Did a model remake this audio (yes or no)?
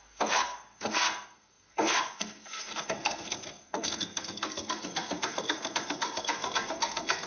yes